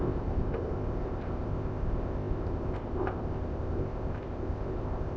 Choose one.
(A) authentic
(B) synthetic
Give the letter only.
B